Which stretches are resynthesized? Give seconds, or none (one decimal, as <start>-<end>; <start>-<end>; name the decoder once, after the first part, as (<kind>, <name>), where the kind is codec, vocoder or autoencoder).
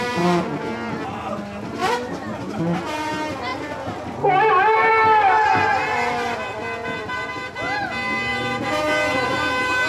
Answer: none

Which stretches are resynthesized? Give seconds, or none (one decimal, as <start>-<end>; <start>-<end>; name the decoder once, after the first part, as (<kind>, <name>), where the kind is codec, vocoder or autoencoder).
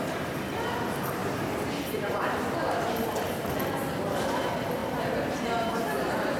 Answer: 4.8-5.4 (vocoder, BigVGAN v2)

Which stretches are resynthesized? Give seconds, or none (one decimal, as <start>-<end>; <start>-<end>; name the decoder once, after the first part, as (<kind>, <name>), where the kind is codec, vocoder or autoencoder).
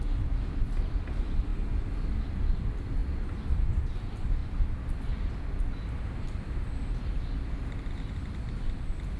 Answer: none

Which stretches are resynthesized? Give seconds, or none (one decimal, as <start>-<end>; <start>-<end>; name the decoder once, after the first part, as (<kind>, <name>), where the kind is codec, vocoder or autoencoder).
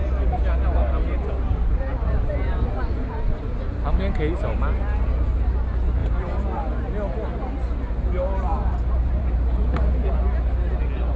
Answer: 0.0-3.1 (vocoder, BigVGAN v2); 6.0-6.7; 8.5-9.9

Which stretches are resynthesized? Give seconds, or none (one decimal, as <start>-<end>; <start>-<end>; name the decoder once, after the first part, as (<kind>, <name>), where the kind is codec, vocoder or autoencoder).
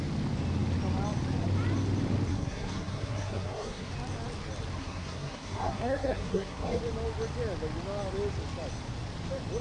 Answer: 2.3-3.9 (codec, SNAC); 4.8-6.8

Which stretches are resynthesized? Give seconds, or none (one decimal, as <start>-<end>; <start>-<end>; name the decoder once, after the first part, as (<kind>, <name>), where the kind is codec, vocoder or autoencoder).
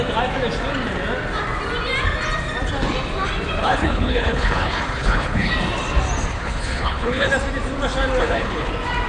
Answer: 3.6-5.5 (codec, HILCodec); 6.3-7.3; 8.2-8.7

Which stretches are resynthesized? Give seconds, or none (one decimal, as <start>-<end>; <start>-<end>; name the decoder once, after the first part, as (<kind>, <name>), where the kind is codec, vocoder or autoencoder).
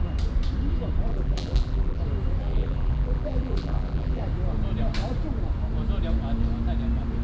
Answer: 1.1-2.0 (vocoder, BigVGAN v2); 2.4-4.2